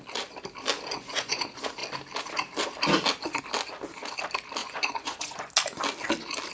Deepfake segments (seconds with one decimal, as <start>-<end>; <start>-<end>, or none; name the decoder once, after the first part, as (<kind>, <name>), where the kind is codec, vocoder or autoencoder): 0.9-1.4 (vocoder, Vocos); 4.6-5.5